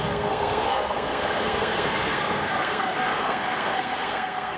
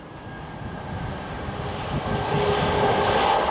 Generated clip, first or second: first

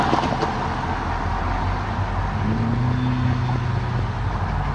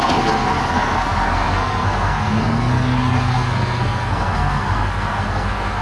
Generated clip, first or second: second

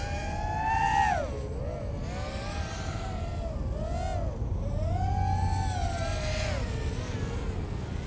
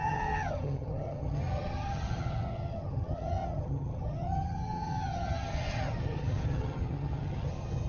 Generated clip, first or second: second